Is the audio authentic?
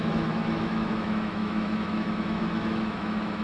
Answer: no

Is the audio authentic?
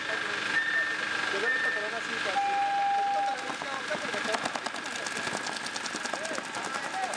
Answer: yes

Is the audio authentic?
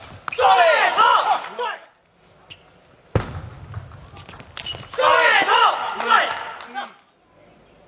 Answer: yes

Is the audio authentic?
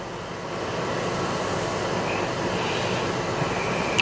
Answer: yes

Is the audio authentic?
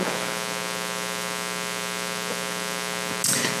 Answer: yes